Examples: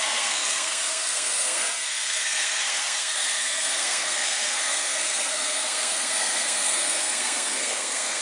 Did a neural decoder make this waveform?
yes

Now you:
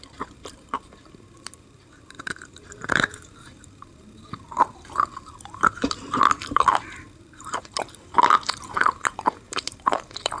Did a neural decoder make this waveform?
yes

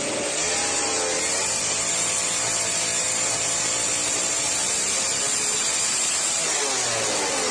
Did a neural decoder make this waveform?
no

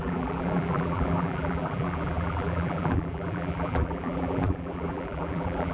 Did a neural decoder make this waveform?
yes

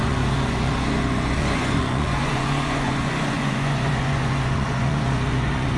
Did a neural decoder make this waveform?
yes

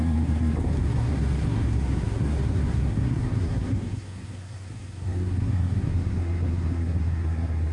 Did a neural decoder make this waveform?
yes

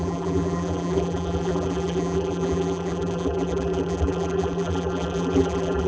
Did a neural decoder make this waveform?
yes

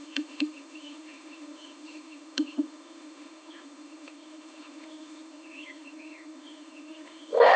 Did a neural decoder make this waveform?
yes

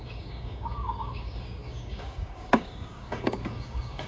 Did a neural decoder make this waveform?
yes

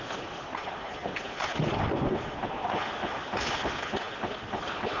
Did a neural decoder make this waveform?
no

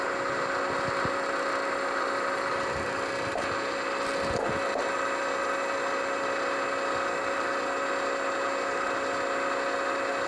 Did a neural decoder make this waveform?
no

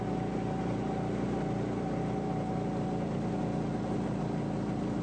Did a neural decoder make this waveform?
no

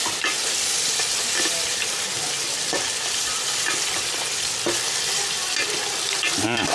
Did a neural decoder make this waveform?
yes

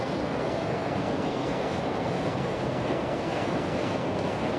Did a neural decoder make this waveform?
yes